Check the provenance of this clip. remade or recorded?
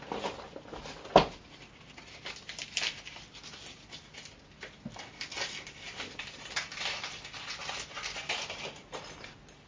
recorded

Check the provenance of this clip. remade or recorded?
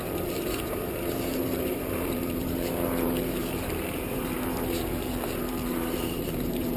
remade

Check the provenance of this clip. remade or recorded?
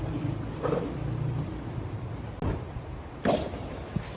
recorded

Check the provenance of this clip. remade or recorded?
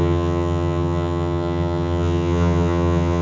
remade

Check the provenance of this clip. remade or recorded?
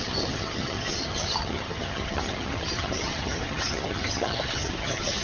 remade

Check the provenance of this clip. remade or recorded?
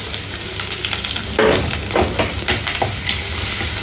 recorded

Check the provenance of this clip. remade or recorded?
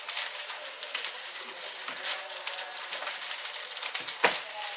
recorded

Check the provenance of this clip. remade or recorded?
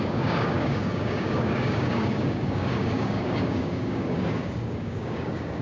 remade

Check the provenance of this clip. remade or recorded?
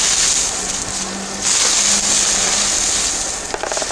recorded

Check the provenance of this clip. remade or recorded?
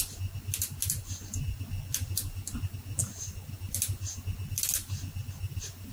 recorded